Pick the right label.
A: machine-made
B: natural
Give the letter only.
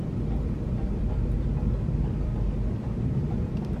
A